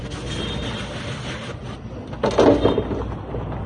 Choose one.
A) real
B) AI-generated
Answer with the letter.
A